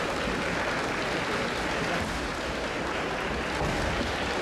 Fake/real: real